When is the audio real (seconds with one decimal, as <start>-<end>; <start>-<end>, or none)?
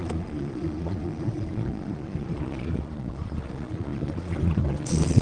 none